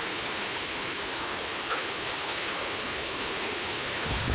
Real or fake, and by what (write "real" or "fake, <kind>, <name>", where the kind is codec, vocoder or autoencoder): fake, codec, HILCodec